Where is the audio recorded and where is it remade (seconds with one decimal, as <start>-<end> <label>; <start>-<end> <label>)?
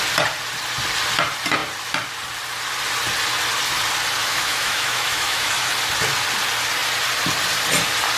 0.0-4.2 recorded; 4.2-5.7 remade; 5.7-8.2 recorded